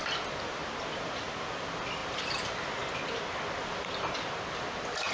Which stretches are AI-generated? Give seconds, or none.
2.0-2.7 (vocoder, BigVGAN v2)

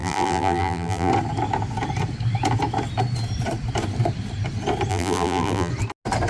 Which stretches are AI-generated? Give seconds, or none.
0.0-1.1 (vocoder, BigVGAN v2); 4.9-5.7

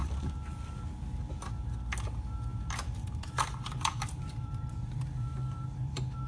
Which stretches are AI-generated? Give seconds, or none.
0.0-0.8 (vocoder, BigVGAN v2); 2.5-6.3

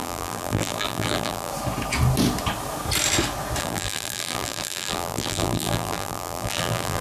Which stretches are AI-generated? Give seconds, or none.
0.0-1.5 (vocoder, BigVGAN v2); 3.6-7.0

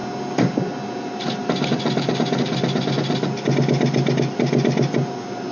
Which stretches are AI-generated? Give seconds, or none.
none

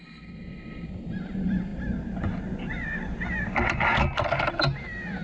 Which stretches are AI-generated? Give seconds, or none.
none